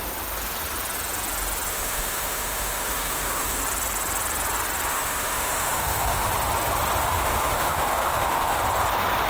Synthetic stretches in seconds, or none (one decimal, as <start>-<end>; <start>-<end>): 1.7-3.6; 4.9-6.3; 7.0-8.6